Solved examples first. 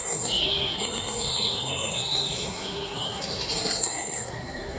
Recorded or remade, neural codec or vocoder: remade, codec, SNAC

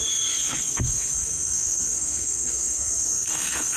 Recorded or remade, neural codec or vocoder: remade, codec, SNAC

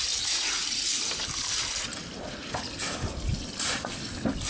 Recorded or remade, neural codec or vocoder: recorded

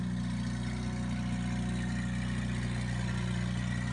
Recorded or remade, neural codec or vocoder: recorded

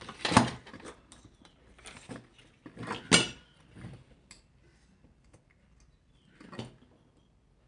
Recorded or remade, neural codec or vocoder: recorded